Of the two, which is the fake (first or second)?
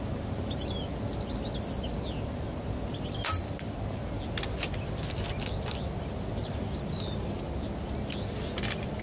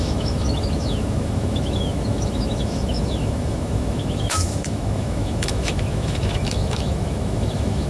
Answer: second